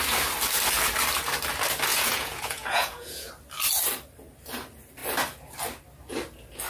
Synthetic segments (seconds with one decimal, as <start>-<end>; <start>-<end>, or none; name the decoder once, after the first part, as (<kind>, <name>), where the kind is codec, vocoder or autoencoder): 1.9-3.3 (vocoder, Vocos)